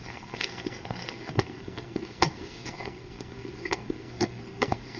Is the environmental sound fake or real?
fake